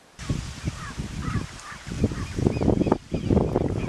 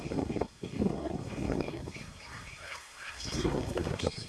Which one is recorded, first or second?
first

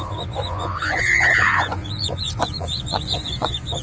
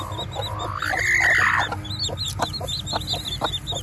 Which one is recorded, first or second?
second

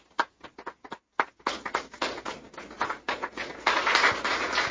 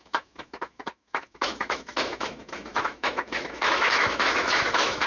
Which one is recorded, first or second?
first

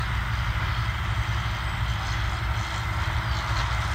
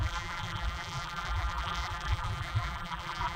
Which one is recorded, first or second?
first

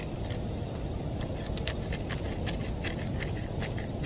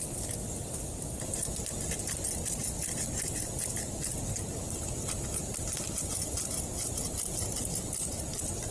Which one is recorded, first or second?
second